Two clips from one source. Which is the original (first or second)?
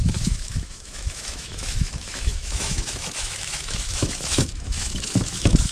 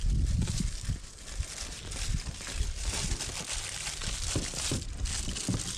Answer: second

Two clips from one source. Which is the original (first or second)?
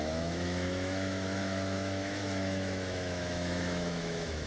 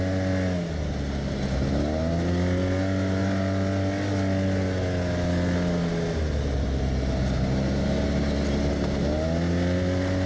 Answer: second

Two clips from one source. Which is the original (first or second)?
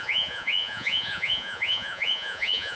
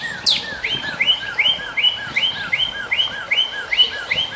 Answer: second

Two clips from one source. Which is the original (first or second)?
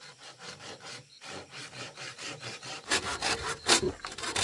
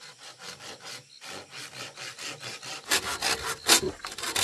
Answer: second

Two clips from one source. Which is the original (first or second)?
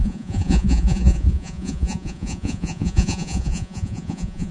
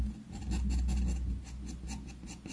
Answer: second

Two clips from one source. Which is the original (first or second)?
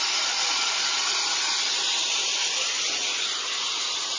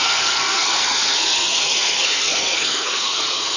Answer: first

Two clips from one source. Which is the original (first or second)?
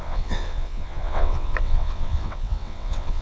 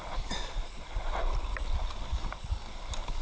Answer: second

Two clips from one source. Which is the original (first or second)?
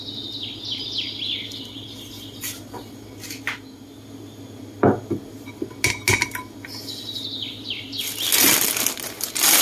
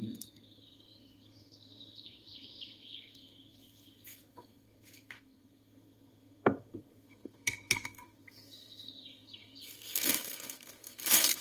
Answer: first